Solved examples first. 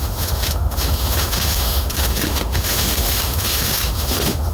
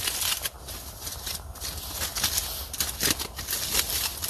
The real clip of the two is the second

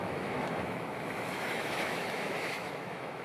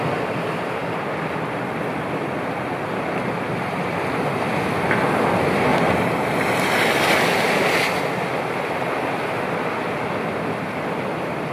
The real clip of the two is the second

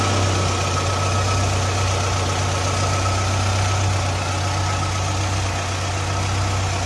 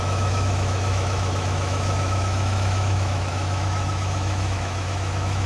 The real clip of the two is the first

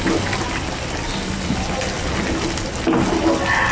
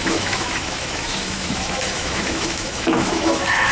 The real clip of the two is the first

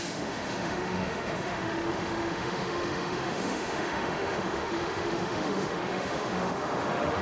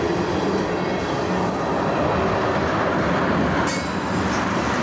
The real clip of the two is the second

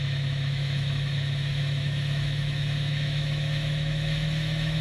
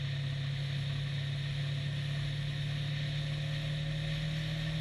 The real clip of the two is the second